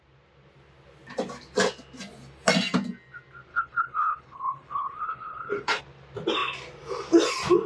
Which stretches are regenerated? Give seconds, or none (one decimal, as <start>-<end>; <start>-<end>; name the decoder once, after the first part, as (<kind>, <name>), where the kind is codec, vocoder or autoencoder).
3.5-5.8 (codec, HILCodec)